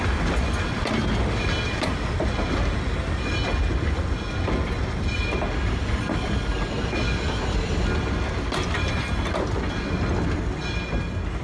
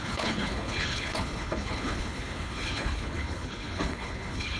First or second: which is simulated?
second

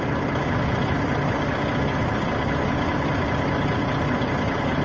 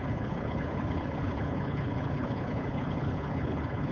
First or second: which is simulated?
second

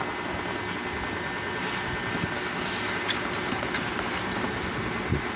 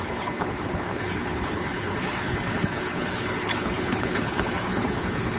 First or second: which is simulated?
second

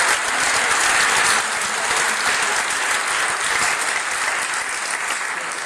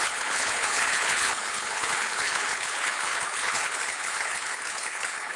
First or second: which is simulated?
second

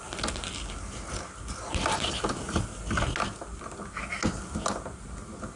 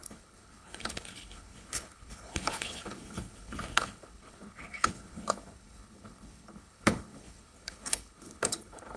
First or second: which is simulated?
second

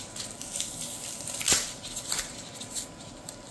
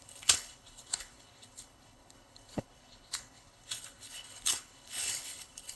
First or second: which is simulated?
second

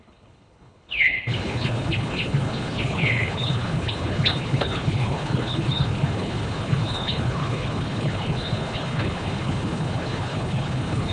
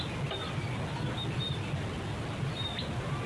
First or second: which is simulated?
first